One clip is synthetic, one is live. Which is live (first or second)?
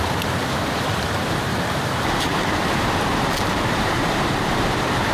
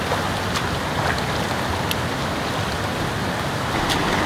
second